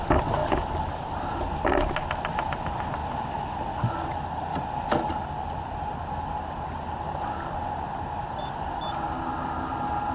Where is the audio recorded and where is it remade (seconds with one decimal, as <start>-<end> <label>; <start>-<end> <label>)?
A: 0.0-10.1 recorded